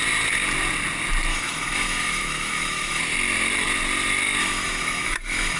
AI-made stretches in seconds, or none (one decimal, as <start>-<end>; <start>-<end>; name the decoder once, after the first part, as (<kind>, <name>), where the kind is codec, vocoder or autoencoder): 1.3-3.0 (autoencoder, DAC-VAE); 4.4-5.6

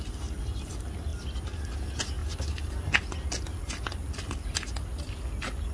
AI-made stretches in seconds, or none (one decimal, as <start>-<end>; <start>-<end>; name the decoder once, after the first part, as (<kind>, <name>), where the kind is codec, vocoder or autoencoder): 1.1-1.6 (vocoder, BigVGAN v2); 2.2-2.7

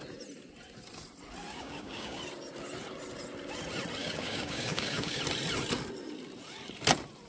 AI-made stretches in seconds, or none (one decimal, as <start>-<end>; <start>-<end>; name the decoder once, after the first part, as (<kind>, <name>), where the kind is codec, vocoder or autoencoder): 1.5-2.2 (codec, DAC); 4.0-5.2

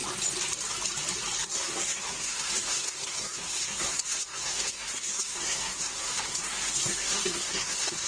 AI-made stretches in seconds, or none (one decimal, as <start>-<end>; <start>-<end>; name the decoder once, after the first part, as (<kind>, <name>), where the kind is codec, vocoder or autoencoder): 1.4-8.1 (codec, SNAC)

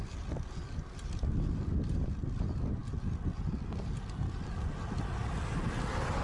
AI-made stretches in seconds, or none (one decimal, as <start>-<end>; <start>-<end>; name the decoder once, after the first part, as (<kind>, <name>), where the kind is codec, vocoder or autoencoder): none

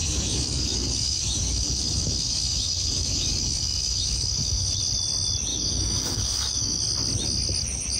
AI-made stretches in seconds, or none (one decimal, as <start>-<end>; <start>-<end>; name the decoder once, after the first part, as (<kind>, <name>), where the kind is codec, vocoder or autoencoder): 0.0-4.7 (codec, DAC); 5.5-6.8

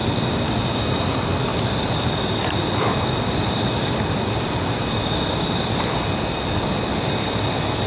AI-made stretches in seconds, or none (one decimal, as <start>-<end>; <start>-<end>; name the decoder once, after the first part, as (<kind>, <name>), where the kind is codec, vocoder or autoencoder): 0.0-0.6 (vocoder, BigVGAN v2); 1.5-6.1

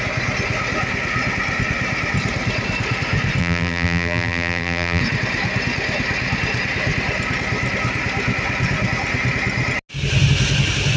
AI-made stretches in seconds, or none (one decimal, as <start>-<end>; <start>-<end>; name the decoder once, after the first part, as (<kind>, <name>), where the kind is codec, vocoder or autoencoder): 3.4-5.0 (vocoder, BigVGAN v2)